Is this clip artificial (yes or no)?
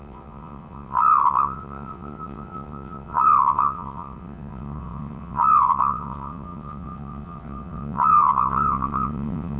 yes